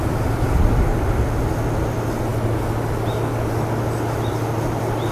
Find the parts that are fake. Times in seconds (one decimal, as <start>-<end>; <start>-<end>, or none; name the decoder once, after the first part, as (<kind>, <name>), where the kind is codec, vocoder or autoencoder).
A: none